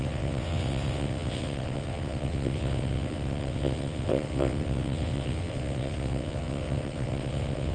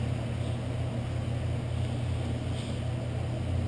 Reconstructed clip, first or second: first